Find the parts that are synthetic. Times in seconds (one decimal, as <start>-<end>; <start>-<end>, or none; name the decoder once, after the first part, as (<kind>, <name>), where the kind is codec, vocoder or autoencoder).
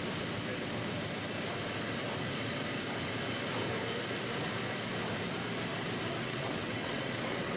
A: 6.2-7.6 (vocoder, WaveNeXt)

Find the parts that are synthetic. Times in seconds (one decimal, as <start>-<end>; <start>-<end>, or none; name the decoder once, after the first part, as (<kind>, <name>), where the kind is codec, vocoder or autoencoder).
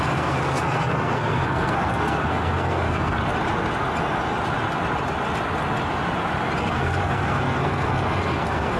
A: 0.0-3.2 (codec, SNAC); 6.6-8.8